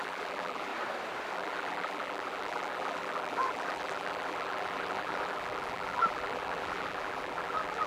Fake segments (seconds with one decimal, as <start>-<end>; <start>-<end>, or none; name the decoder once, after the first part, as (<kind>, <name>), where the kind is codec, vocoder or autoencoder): 0.0-0.7 (vocoder, BigVGAN v2); 1.3-7.9